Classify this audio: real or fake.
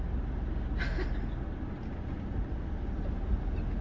real